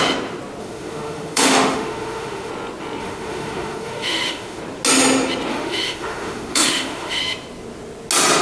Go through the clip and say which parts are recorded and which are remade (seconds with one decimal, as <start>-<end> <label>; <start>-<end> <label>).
0.0-0.6 recorded; 0.6-2.5 remade; 2.5-3.0 recorded; 3.0-4.6 remade; 4.6-5.5 recorded; 5.5-7.2 remade; 7.2-8.4 recorded